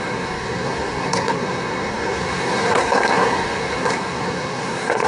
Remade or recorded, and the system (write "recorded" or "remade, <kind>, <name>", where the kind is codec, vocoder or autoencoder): remade, codec, SNAC